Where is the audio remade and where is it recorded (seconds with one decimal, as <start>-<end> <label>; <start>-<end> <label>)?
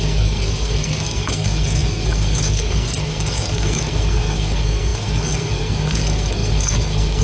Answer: 0.0-7.2 remade